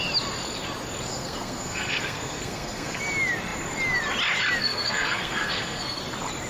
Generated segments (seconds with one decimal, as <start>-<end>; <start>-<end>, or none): 1.1-3.0; 4.6-6.0